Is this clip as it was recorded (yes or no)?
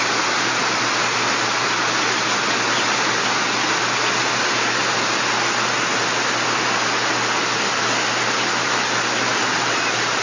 yes